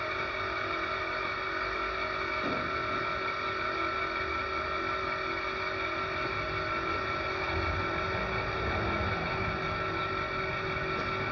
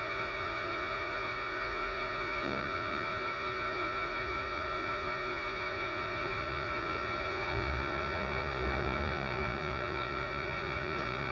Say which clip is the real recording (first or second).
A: first